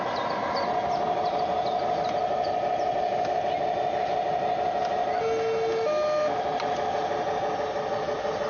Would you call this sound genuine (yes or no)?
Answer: yes